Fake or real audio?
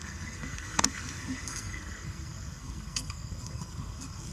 fake